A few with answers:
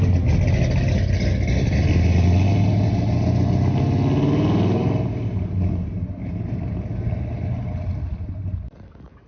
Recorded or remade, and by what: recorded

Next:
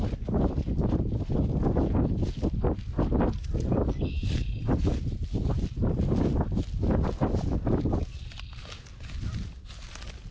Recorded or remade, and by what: recorded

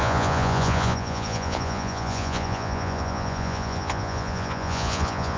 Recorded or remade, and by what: remade, vocoder, Vocos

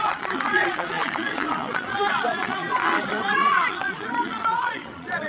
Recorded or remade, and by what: remade, vocoder, Vocos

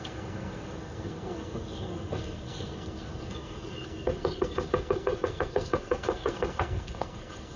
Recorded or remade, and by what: remade, codec, SNAC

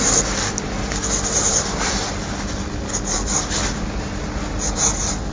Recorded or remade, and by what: recorded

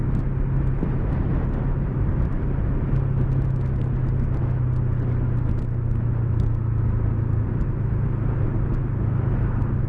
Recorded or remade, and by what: recorded